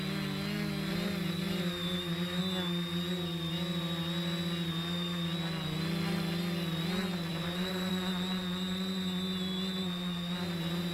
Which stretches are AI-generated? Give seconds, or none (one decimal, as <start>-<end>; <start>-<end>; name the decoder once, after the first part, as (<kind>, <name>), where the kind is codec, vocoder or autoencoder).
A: 0.9-2.4 (vocoder, BigVGAN v2); 7.3-7.9